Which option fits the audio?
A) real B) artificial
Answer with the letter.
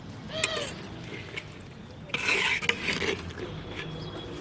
A